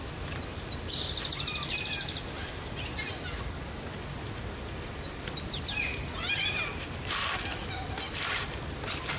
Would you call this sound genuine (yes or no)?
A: yes